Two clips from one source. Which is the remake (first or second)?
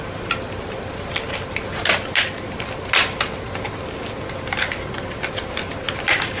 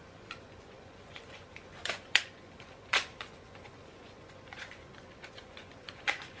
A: second